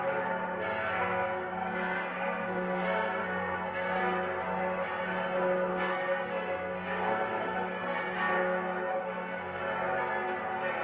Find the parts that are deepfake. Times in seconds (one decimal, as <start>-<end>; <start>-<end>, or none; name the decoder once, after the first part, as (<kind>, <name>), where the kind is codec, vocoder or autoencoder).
1.0-4.0 (codec, SNAC); 5.7-8.0; 8.9-9.6